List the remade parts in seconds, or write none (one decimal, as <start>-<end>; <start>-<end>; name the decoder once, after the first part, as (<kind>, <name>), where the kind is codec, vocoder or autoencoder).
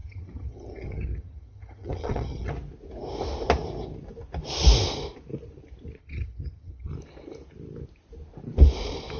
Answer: 0.0-2.5 (vocoder, HiFi-GAN); 6.0-6.9